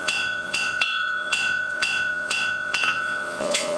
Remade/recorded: remade